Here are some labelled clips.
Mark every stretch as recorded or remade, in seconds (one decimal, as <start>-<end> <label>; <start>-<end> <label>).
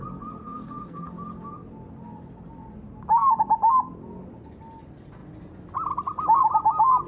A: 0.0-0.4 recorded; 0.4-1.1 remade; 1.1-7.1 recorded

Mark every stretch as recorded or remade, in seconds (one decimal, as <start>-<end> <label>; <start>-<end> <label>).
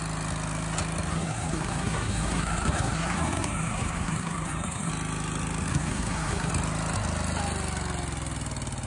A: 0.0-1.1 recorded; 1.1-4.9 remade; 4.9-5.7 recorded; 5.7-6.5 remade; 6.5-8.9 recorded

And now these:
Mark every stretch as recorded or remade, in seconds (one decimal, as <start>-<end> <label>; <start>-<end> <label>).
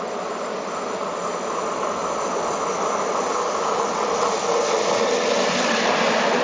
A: 0.0-6.4 recorded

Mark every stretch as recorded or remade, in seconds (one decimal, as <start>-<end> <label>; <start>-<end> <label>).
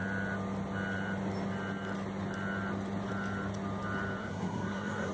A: 0.0-4.2 recorded; 4.2-5.1 remade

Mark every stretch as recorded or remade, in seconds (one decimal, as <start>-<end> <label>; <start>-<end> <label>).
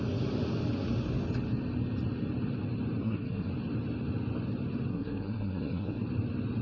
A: 0.0-3.0 recorded; 3.0-3.5 remade; 3.5-4.9 recorded; 4.9-6.0 remade; 6.0-6.6 recorded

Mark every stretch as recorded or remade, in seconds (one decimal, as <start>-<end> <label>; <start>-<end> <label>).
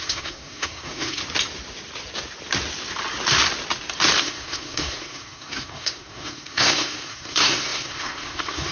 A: 0.0-1.2 remade; 1.2-4.2 recorded; 4.2-8.7 remade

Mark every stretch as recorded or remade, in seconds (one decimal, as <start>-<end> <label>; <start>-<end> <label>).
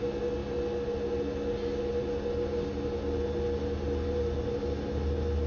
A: 0.0-5.5 recorded